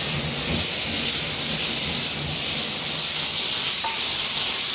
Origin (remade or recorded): recorded